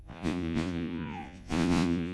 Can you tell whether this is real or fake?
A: fake